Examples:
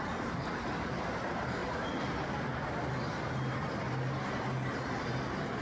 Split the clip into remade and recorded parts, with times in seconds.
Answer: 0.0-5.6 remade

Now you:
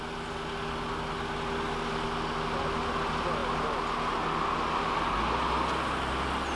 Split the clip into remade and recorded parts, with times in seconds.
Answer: 0.0-6.6 recorded